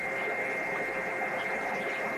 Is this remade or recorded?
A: remade